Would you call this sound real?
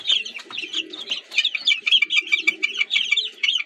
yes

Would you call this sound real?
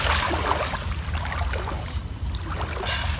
yes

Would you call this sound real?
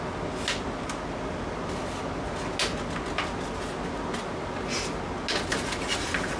yes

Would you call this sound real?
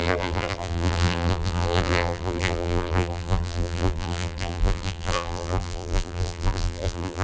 no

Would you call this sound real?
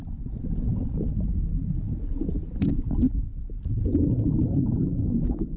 yes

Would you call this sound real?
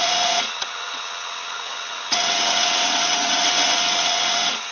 no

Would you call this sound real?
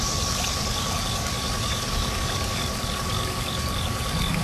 no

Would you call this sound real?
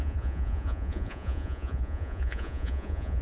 no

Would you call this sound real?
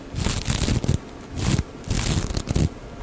yes